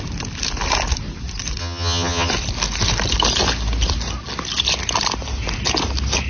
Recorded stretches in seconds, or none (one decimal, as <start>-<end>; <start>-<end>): 0.0-1.6; 2.3-6.3